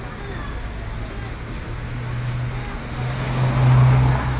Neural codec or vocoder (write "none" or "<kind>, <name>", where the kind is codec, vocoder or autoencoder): none